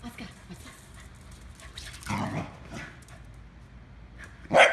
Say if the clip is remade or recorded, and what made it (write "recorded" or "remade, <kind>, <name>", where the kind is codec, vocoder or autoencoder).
recorded